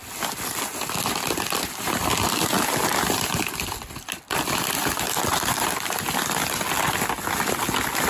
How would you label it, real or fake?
real